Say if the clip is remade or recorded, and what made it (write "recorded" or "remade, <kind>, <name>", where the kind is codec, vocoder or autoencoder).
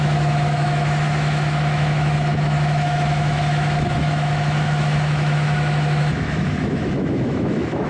remade, autoencoder, DAC-VAE